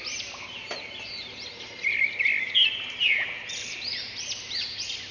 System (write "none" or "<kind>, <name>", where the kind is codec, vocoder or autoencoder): vocoder, BigVGAN v2